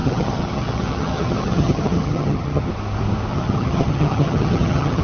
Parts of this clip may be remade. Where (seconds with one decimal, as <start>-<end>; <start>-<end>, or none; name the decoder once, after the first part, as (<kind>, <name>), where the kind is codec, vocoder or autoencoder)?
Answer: 0.0-2.7 (vocoder, HiFi-GAN); 3.3-5.0